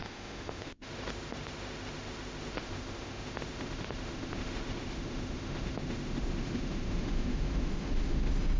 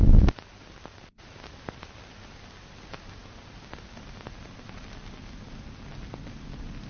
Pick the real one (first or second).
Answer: second